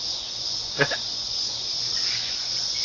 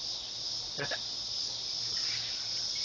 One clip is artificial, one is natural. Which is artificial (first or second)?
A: first